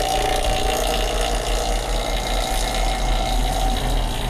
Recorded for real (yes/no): yes